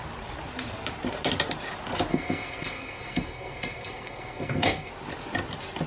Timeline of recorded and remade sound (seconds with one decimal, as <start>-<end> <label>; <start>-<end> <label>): 0.0-2.1 recorded; 2.1-4.9 remade; 4.9-5.9 recorded